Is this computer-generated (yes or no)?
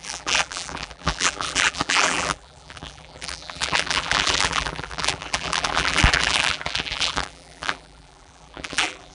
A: yes